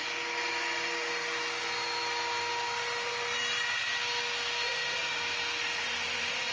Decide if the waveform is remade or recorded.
recorded